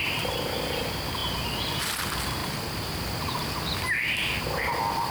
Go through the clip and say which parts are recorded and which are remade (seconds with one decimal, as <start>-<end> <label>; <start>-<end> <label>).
0.0-5.1 recorded